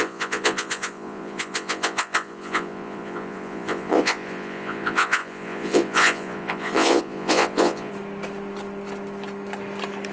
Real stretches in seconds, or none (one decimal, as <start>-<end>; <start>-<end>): 7.9-10.1